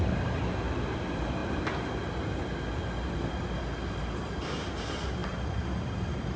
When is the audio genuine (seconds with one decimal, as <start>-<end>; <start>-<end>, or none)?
0.0-6.4

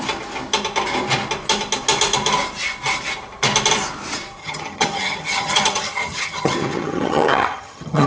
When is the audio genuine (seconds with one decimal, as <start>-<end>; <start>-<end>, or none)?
0.0-4.4

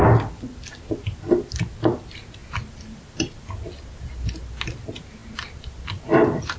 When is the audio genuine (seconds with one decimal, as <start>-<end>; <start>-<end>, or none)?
0.0-6.6

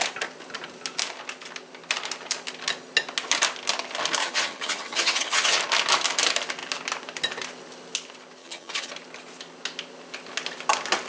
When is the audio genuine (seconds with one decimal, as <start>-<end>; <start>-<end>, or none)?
0.0-4.2; 5.6-8.4; 8.9-11.1

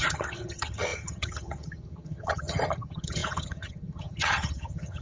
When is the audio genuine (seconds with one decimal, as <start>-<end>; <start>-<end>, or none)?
none

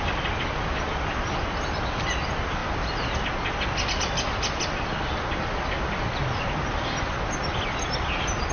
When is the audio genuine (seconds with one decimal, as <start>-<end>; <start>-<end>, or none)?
0.0-8.5

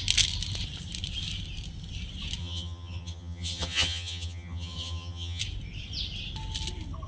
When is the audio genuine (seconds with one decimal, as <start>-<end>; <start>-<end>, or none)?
0.0-2.4; 5.4-7.1

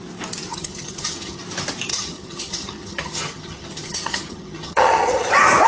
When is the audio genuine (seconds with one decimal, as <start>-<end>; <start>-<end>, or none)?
0.0-0.5; 1.4-1.9; 5.3-5.7